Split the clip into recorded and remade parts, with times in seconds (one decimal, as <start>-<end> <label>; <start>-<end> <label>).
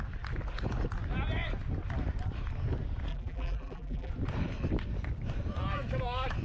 0.0-3.1 recorded; 3.1-4.1 remade; 4.1-6.4 recorded